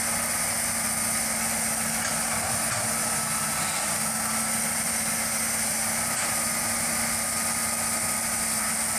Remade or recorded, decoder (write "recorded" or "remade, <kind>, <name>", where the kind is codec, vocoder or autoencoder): recorded